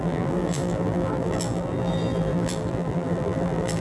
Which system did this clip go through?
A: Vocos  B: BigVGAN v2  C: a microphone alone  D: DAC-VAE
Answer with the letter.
B